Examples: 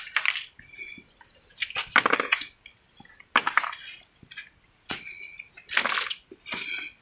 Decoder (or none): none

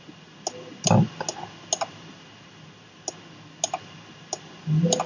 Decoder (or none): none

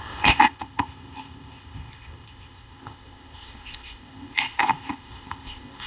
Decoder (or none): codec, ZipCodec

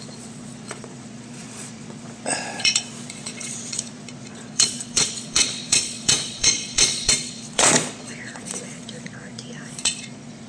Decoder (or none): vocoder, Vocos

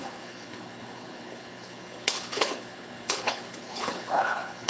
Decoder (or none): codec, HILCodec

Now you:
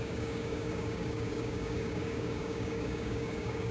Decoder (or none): codec, DAC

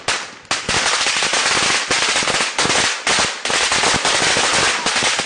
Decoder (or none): none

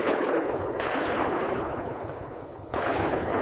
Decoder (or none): codec, HILCodec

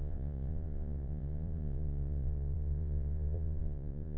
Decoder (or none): vocoder, Vocos